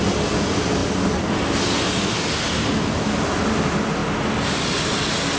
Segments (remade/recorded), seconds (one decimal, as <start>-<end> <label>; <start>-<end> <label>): 0.0-5.4 recorded